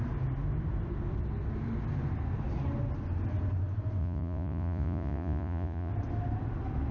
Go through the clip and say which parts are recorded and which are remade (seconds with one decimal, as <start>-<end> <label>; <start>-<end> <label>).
0.0-4.0 recorded; 4.0-5.9 remade; 5.9-6.9 recorded